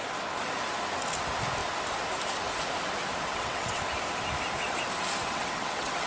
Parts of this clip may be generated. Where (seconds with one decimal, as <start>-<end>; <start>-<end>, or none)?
3.3-3.8; 5.2-6.1